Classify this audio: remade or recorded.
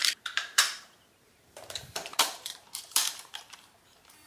remade